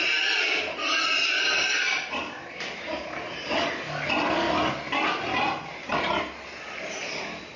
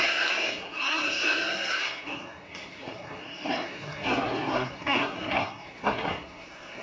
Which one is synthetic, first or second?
second